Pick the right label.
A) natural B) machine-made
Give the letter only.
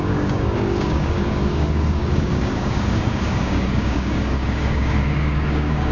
B